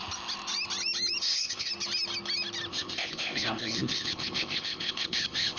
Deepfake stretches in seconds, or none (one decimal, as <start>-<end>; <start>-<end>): 1.2-1.7; 2.7-5.6